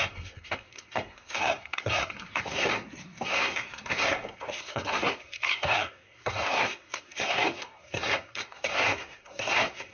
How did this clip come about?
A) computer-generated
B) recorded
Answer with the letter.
A